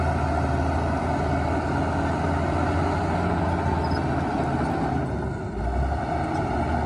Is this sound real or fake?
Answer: real